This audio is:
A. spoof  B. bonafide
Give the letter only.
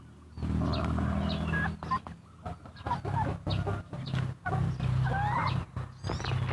B